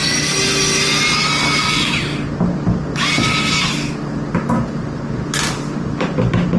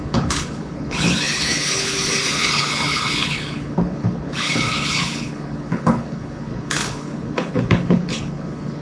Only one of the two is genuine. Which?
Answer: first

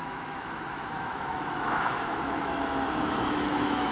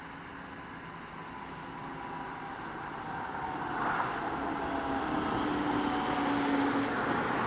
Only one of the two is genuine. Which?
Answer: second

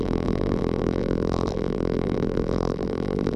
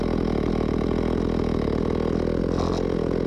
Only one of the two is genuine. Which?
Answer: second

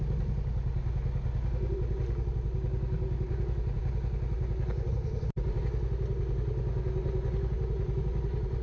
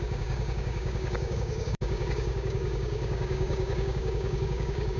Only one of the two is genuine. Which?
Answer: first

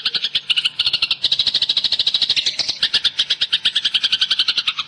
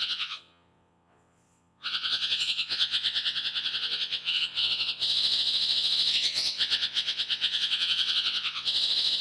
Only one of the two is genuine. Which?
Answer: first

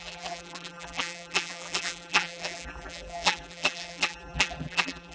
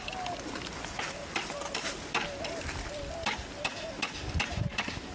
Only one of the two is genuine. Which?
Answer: second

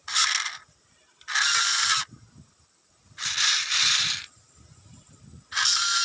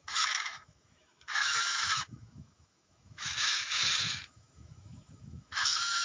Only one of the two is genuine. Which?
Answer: first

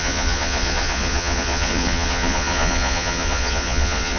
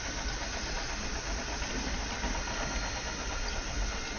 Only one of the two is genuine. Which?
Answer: second